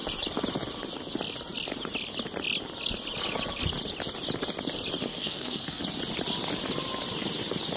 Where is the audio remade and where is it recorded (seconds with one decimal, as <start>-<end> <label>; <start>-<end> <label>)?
0.0-5.1 recorded; 5.1-5.8 remade; 5.8-7.8 recorded